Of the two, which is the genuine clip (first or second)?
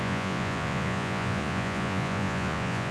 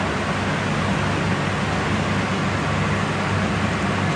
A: second